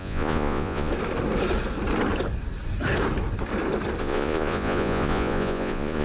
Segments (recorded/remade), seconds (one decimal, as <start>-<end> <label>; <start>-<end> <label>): 0.0-0.9 remade; 0.9-4.0 recorded; 4.0-6.0 remade